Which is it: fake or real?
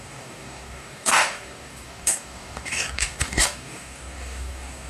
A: fake